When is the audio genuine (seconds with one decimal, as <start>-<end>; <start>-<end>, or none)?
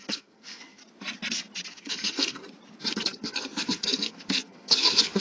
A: 0.8-1.7; 2.4-3.0